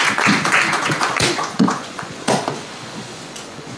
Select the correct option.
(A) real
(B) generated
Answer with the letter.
B